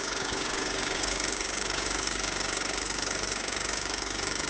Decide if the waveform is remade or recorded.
remade